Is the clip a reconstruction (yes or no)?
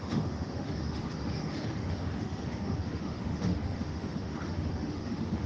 yes